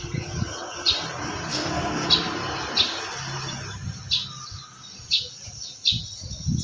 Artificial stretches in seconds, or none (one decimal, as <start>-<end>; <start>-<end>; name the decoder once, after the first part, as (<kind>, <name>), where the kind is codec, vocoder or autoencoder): 1.5-2.1 (codec, SNAC)